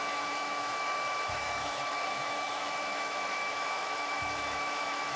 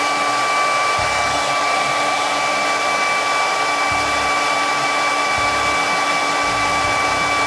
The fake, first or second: first